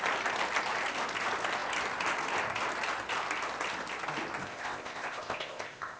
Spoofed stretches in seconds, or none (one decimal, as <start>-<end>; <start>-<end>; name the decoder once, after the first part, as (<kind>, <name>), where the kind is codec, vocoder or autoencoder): 4.4-6.0 (codec, ZipCodec)

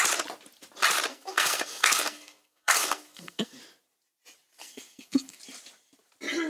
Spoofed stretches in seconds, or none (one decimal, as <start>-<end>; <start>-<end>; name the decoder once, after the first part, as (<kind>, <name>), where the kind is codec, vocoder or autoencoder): 1.1-3.6 (codec, SNAC); 4.6-5.4

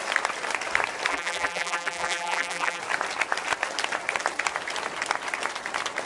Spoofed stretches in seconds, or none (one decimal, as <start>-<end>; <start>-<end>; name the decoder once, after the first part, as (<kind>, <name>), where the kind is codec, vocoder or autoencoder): 1.1-2.8 (vocoder, BigVGAN v2)

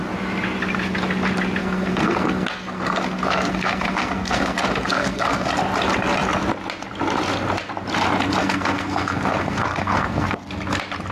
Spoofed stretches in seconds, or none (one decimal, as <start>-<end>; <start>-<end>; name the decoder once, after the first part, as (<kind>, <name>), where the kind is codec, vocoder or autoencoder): 1.6-5.5 (codec, SNAC); 8.4-10.5

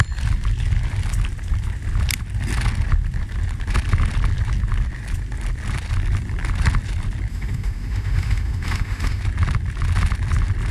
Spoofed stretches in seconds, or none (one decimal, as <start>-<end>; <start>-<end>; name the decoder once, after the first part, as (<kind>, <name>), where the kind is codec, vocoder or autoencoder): 7.3-9.2 (autoencoder, DAC-VAE)

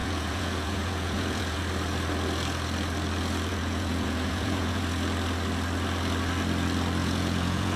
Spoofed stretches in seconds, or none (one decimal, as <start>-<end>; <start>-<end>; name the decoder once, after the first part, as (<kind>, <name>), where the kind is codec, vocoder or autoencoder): 0.0-1.6 (vocoder, Vocos); 3.5-4.8; 7.0-7.8

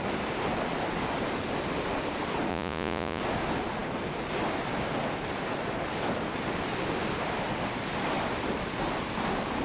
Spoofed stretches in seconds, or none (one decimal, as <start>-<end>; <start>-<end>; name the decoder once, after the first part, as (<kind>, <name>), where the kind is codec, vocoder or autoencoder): 2.5-3.2 (vocoder, Vocos)

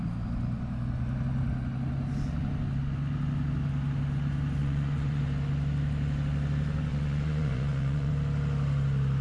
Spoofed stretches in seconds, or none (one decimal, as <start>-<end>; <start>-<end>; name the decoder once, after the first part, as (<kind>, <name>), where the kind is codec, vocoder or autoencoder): 4.6-5.2 (vocoder, Vocos); 6.9-8.1